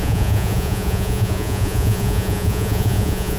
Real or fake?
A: fake